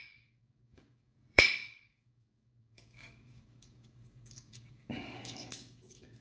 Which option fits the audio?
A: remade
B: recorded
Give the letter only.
A